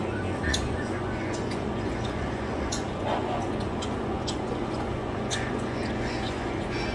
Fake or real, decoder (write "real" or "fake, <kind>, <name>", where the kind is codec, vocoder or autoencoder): fake, vocoder, Vocos